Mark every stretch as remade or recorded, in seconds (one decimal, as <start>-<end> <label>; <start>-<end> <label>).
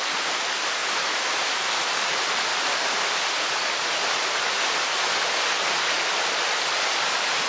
0.0-0.8 recorded; 0.8-1.7 remade; 1.7-2.5 recorded; 2.5-3.1 remade; 3.1-7.5 recorded